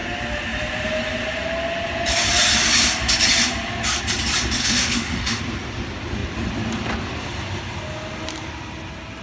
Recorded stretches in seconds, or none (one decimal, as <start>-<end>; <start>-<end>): 0.0-4.6; 5.4-9.2